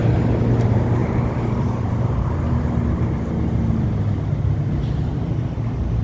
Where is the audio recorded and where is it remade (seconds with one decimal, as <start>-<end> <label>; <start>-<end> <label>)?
0.0-6.0 recorded